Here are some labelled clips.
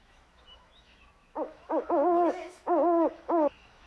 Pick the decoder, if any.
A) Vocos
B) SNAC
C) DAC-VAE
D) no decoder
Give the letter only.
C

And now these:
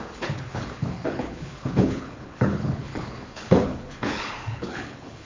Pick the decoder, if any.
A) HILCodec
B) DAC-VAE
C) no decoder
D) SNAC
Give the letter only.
A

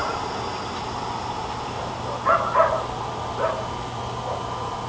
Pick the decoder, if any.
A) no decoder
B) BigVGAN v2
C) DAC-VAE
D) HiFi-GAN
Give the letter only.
A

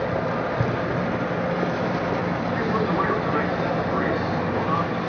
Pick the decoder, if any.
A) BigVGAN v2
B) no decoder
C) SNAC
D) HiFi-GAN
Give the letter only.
B